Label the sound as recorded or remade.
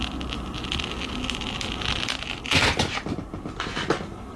recorded